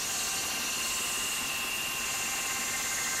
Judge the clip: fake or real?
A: real